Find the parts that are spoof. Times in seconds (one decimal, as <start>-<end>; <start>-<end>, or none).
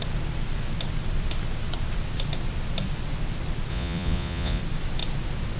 3.7-4.6